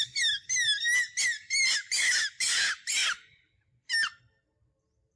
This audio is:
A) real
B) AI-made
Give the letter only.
A